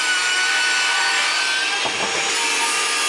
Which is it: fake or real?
real